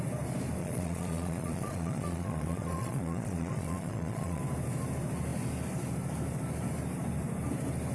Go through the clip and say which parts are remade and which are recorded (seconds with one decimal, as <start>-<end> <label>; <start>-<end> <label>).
0.0-0.6 recorded; 0.6-4.4 remade; 4.4-7.9 recorded